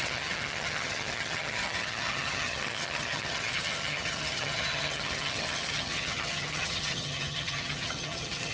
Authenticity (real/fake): fake